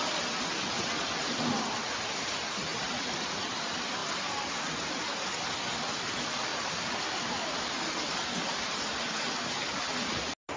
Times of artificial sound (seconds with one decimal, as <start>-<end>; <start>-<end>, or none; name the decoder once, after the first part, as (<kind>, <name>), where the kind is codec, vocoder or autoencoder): 2.7-3.4 (vocoder, BigVGAN v2); 6.5-7.5